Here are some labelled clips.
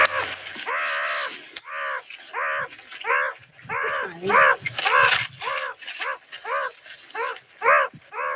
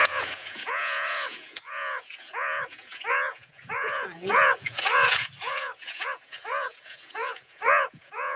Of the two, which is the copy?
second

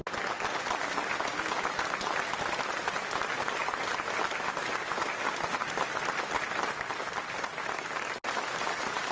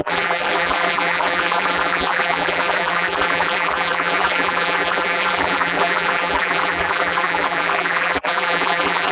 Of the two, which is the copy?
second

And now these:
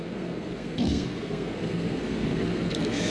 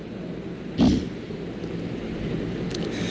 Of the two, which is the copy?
first